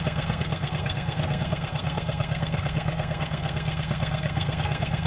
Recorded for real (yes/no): no